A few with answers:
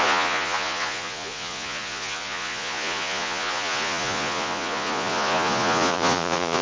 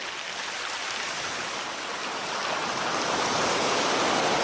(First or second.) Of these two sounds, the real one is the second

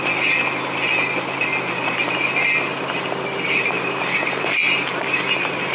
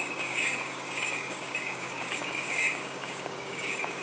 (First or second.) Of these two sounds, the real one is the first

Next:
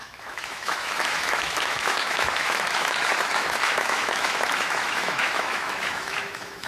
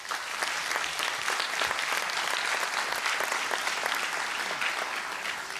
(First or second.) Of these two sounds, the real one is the second